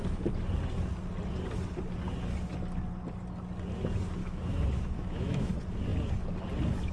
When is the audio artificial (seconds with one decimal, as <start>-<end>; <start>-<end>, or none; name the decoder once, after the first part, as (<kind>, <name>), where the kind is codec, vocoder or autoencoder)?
4.2-5.5 (autoencoder, DAC-VAE)